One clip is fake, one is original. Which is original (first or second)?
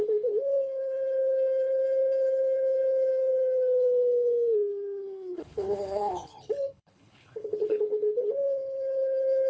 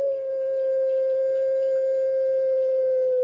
second